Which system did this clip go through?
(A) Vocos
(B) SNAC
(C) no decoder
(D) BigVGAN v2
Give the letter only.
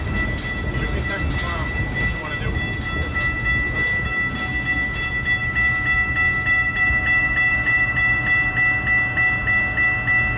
C